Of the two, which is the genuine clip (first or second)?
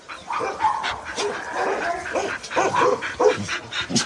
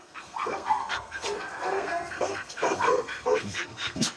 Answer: first